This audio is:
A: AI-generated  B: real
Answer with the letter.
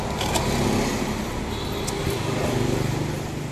B